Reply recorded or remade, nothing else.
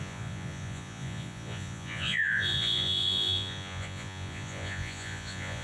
remade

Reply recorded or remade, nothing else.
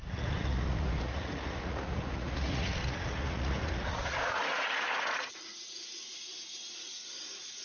remade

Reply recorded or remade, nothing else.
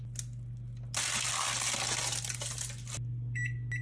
recorded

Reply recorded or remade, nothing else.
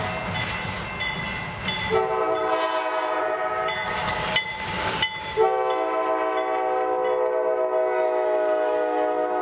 recorded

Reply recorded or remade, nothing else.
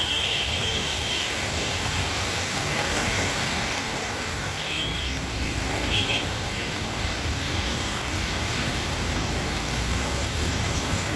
remade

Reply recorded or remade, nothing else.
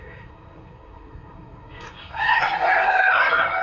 remade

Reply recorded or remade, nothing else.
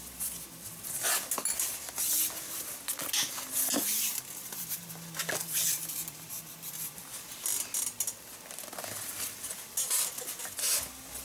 recorded